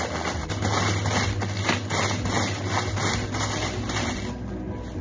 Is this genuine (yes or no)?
yes